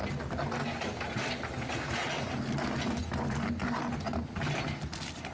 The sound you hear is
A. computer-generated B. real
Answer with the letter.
B